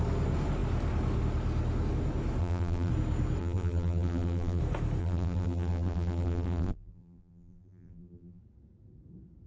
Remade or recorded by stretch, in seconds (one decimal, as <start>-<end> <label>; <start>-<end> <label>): 0.0-2.4 recorded; 2.4-2.9 remade; 2.9-3.4 recorded; 3.4-4.6 remade; 4.6-5.0 recorded; 5.0-8.4 remade; 8.4-9.5 recorded